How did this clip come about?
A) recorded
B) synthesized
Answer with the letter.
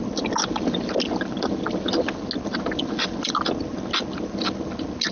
A